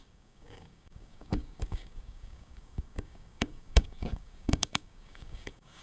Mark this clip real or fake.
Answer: fake